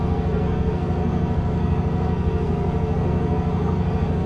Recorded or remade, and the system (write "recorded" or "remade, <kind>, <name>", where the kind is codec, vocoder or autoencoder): remade, codec, SNAC